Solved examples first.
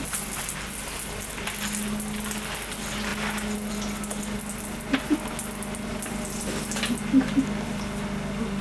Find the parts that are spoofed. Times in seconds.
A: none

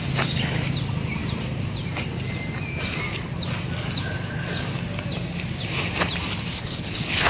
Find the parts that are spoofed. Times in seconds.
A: 6.5-7.3 (codec, HILCodec)

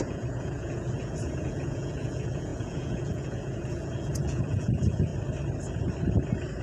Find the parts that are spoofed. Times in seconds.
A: 0.0-5.1 (vocoder, Vocos)

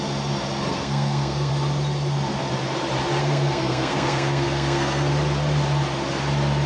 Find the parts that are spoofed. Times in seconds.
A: 0.7-1.5 (codec, SNAC); 3.2-5.1

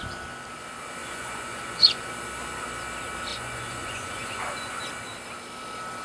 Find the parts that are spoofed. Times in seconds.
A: 1.0-2.1 (vocoder, Vocos); 3.3-4.8

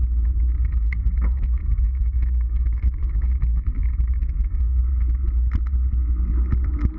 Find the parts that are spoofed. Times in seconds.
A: 0.6-4.8 (codec, SNAC)

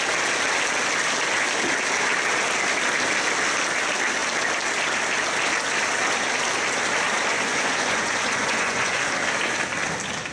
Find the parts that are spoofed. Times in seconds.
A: 7.3-9.0 (vocoder, Vocos)